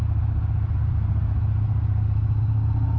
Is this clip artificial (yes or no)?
no